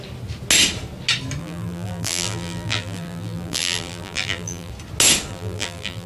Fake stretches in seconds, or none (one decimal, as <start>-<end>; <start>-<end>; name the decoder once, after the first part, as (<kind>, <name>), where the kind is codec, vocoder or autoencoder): 1.4-4.7 (vocoder, BigVGAN v2); 5.3-6.1